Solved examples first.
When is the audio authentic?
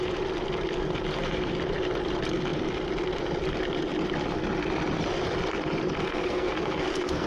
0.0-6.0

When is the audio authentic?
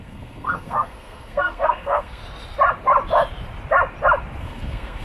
2.2-4.4